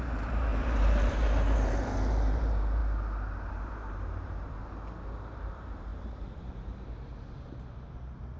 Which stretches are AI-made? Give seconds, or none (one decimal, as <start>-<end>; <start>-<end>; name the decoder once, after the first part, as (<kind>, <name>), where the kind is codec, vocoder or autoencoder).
0.0-2.8 (vocoder, BigVGAN v2); 3.5-4.6; 5.2-8.4